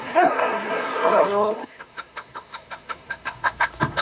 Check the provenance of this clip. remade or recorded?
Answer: remade